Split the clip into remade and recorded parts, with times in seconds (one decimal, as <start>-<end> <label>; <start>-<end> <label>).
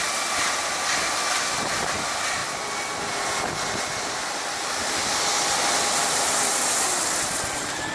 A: 0.0-7.9 recorded